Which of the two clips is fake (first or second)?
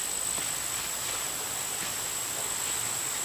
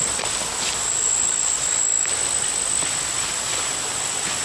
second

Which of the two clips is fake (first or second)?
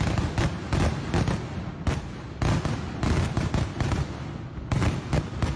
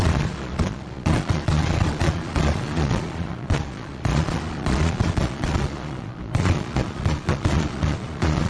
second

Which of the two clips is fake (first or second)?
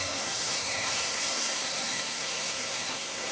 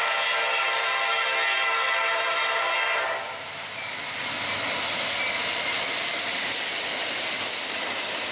first